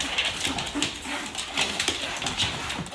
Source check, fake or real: real